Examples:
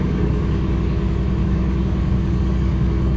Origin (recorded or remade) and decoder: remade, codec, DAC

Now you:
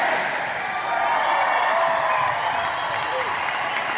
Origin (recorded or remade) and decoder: recorded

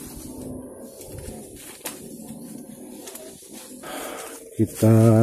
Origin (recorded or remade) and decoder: recorded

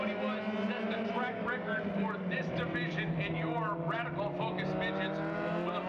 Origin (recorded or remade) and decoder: recorded